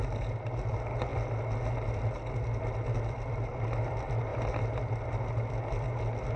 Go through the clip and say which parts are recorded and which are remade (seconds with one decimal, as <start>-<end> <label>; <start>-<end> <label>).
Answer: 0.0-6.4 recorded